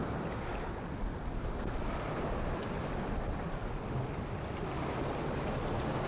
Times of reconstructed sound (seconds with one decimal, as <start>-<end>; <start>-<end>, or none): none